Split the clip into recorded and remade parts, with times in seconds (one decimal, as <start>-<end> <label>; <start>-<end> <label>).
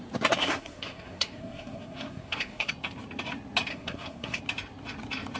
0.0-0.4 recorded; 0.4-2.7 remade; 2.7-3.7 recorded; 3.7-4.4 remade; 4.4-5.4 recorded